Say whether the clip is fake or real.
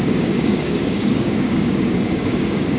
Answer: fake